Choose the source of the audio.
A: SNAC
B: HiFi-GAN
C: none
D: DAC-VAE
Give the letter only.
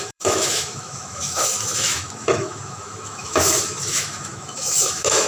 D